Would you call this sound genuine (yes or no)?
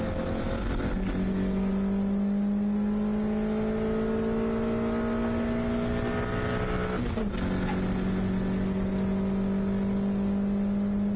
yes